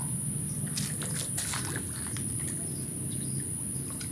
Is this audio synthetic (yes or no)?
no